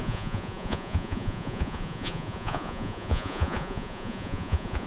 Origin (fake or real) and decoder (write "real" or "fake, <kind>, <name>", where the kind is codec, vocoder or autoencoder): fake, vocoder, Vocos